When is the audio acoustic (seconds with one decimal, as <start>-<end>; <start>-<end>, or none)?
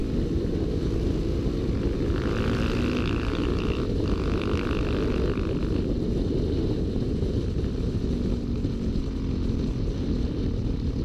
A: 0.0-11.0